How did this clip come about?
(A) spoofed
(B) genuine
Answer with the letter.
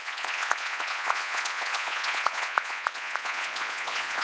A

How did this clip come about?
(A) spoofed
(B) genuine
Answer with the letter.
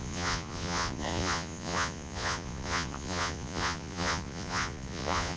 A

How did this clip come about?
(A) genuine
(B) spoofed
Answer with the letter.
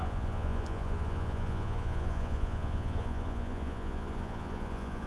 B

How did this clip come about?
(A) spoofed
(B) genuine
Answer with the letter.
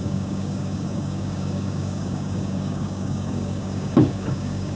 A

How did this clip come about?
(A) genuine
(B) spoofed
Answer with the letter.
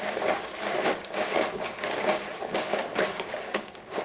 B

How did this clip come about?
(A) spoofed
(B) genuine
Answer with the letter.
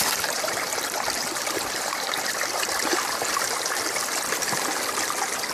A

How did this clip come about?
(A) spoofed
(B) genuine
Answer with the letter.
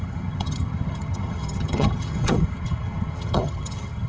A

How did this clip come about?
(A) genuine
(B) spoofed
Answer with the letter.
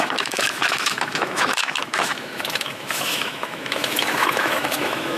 B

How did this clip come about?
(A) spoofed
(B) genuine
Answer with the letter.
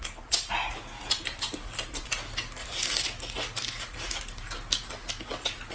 B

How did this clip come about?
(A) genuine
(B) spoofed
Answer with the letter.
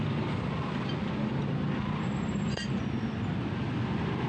A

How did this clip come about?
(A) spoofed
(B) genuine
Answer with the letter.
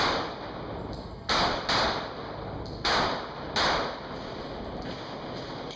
B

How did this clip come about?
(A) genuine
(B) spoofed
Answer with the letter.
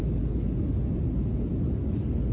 A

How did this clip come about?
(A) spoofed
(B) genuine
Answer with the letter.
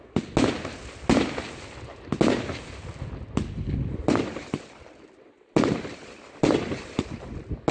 B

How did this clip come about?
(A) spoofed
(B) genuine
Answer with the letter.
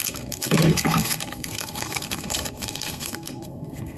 A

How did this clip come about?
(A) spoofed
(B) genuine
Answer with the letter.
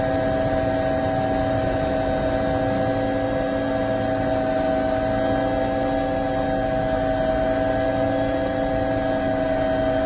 B